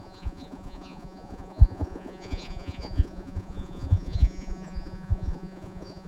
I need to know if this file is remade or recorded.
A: remade